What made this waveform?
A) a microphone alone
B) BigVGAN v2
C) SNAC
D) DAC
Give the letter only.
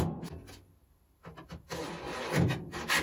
A